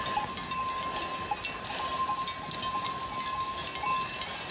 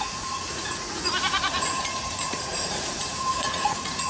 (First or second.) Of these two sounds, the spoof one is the second